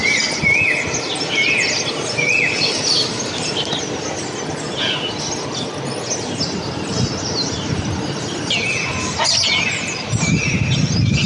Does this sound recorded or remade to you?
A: recorded